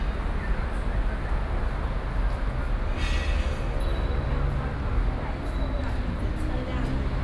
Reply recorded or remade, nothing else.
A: recorded